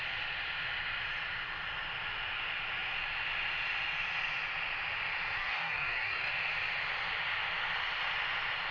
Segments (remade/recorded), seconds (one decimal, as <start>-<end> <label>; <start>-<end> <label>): 0.0-5.4 recorded; 5.4-6.3 remade; 6.3-8.7 recorded